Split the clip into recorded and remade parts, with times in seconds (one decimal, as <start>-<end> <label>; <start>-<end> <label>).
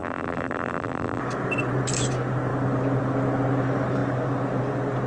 0.0-1.2 remade; 1.2-5.1 recorded